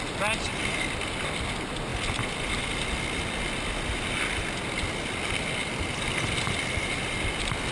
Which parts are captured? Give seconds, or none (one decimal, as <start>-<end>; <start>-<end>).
0.0-5.6; 7.0-7.7